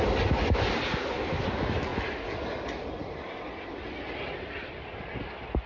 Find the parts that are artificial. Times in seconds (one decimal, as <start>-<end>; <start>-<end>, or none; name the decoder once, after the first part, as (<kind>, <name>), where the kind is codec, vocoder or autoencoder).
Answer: none